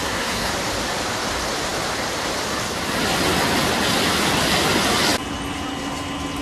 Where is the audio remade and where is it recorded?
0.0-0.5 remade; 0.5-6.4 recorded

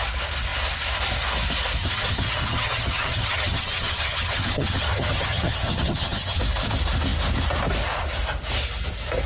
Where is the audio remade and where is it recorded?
0.0-1.8 recorded; 1.8-6.4 remade; 6.4-9.3 recorded

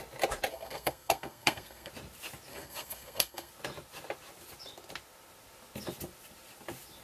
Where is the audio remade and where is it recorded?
0.0-0.5 recorded; 0.5-1.9 remade; 1.9-2.5 recorded; 2.5-3.5 remade; 3.5-7.0 recorded

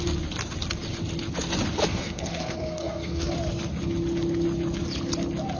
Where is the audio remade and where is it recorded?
0.0-1.9 recorded; 1.9-3.3 remade; 3.3-5.6 recorded